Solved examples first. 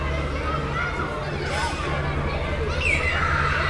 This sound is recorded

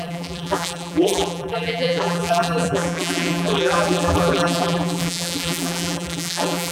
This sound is remade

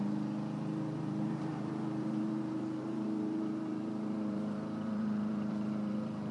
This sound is remade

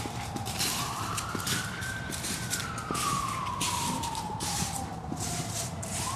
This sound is remade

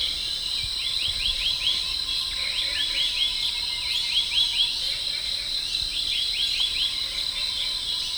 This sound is recorded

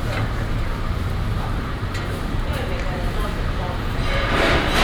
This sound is remade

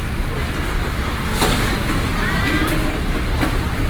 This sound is recorded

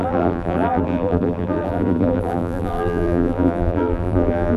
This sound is remade